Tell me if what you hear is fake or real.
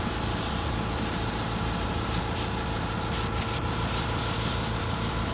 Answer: real